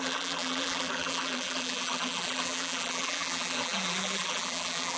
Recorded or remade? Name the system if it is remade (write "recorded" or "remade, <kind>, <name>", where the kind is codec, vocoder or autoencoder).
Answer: remade, vocoder, BigVGAN v2